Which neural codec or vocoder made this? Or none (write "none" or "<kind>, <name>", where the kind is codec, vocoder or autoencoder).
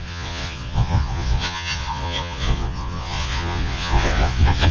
vocoder, Vocos